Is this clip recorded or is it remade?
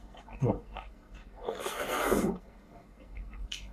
remade